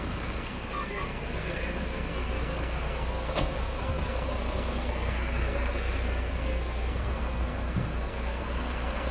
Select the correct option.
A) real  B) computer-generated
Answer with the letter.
B